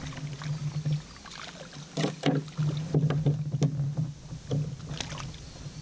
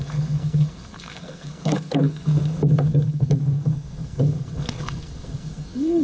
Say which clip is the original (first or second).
first